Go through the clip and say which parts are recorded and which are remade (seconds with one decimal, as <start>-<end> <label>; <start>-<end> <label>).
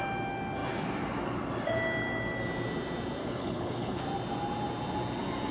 0.0-3.2 recorded; 3.2-4.0 remade; 4.0-5.5 recorded